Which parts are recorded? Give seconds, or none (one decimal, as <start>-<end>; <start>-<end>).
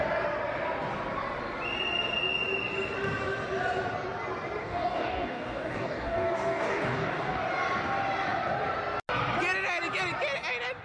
0.0-4.6; 7.4-10.8